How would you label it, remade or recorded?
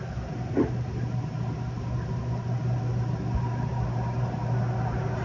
recorded